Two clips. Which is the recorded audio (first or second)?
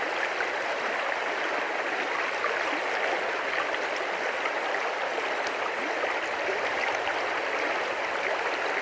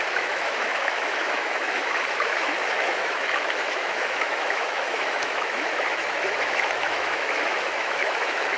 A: first